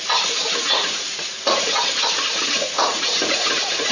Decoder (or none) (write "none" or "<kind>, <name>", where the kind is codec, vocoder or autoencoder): vocoder, Vocos